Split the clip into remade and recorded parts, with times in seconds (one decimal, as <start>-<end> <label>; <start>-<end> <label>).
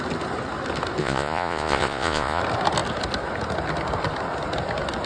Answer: 0.0-1.0 recorded; 1.0-2.4 remade; 2.4-5.1 recorded